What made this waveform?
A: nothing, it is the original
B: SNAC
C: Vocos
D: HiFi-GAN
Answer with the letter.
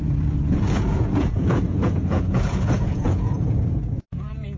C